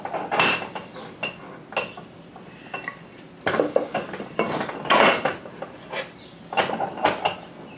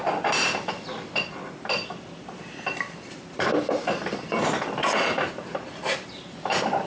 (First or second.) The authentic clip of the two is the first